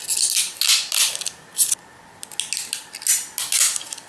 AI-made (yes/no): no